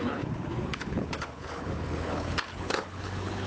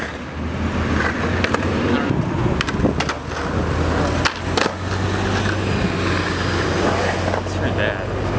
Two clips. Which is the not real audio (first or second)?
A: first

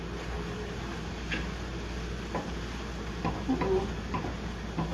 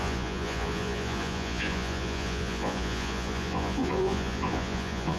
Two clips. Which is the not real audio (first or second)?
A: second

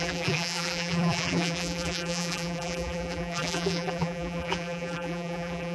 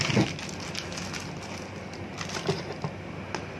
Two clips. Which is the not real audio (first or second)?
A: first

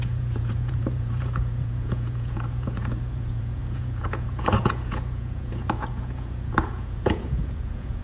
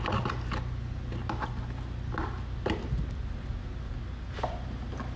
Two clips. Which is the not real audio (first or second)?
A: first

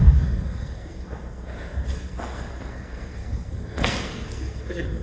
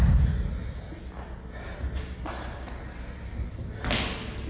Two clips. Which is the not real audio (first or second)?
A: first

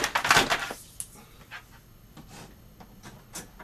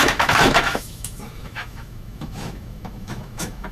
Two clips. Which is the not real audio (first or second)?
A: second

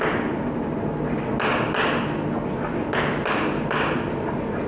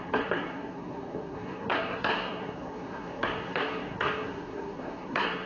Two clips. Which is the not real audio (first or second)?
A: second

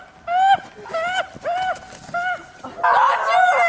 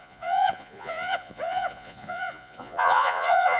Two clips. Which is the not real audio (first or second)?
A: second